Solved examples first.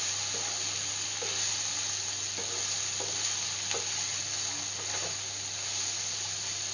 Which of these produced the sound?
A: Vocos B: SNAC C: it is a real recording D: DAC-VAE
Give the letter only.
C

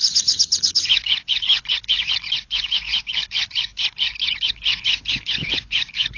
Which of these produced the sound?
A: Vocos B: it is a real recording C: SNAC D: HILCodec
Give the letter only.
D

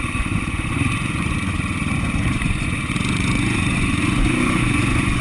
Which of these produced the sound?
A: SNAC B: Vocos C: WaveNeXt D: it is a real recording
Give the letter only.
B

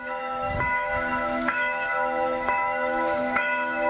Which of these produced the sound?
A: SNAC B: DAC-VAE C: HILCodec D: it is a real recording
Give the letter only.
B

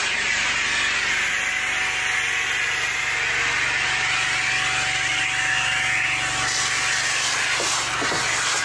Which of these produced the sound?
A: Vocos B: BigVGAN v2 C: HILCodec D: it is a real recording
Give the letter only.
D